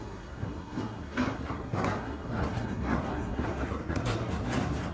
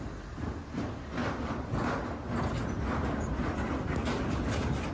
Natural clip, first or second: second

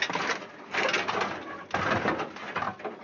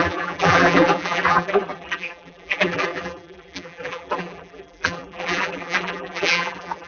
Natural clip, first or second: first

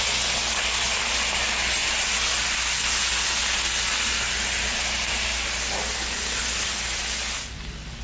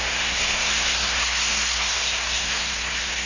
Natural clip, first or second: first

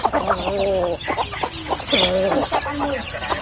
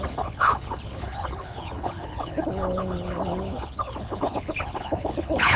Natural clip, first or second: first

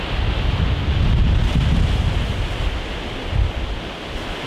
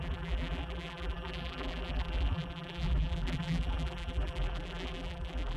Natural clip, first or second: first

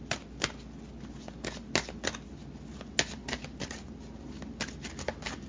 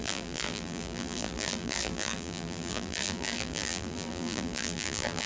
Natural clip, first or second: first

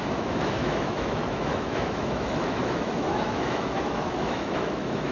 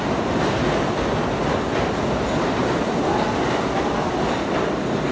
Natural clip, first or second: second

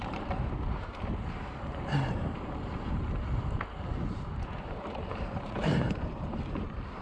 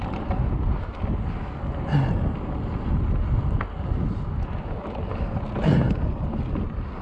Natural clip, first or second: second